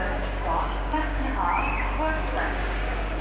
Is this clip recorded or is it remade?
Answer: remade